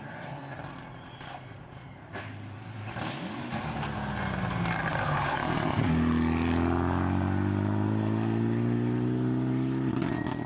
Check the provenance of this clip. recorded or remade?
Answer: recorded